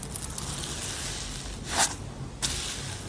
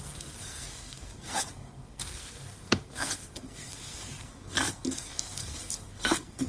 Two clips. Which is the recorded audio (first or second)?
first